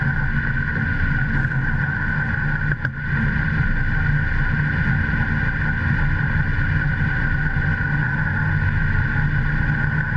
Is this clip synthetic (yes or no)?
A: no